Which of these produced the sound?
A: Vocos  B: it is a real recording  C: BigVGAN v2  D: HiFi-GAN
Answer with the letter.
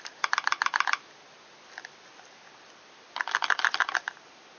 B